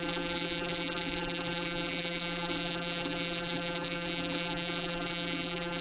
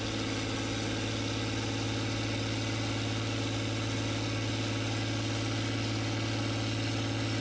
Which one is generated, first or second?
first